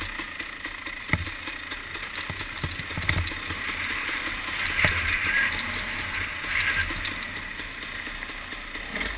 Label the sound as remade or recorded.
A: recorded